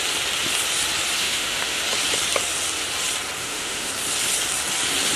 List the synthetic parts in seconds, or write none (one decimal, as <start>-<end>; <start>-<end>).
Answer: 1.2-1.8; 3.4-3.9